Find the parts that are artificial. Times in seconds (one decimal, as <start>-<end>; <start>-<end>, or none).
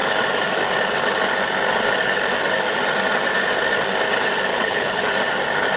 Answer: 4.5-5.0